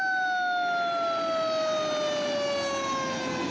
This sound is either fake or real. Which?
real